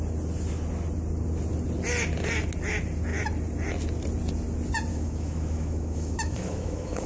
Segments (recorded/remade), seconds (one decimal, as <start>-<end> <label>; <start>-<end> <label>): 0.0-4.9 recorded; 4.9-7.1 remade